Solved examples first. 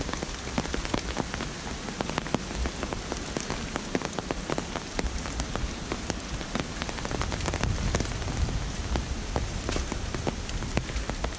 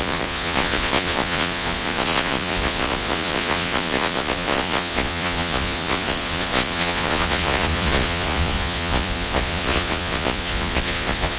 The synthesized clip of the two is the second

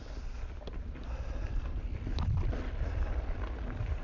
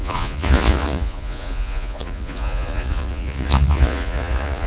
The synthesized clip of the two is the second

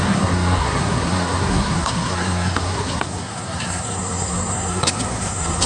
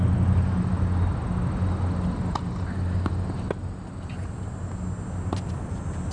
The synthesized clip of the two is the first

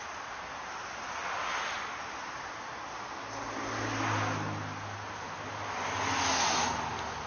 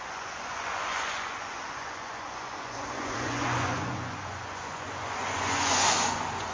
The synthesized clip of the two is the second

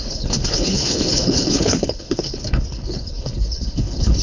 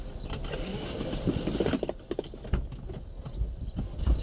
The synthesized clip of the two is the first